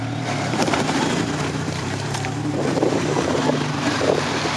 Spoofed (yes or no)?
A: yes